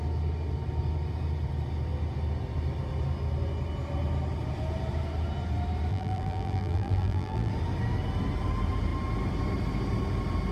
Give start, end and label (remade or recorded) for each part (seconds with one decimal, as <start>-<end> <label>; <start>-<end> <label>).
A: 0.0-5.9 recorded; 5.9-7.5 remade; 7.5-10.5 recorded